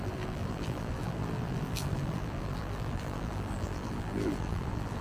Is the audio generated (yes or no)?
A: yes